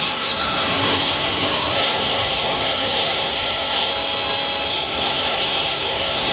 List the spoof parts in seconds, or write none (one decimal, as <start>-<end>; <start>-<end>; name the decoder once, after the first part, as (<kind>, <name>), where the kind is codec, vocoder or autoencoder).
0.0-3.9 (codec, SNAC); 4.7-6.3